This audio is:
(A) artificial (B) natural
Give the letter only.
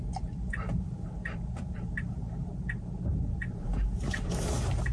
A